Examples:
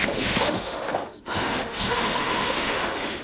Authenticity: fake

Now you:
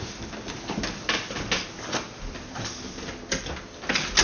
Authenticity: real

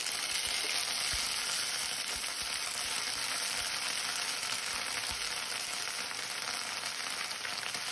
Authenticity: real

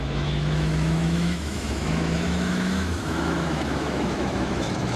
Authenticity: fake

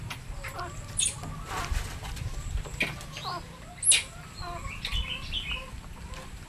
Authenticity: real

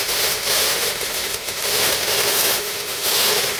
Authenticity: fake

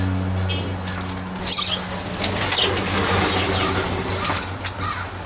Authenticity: real